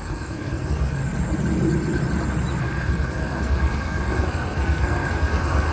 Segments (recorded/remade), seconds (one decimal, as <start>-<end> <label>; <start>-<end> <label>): 0.0-1.0 remade; 1.0-2.6 recorded; 2.6-5.7 remade